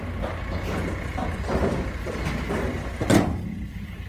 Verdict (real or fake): real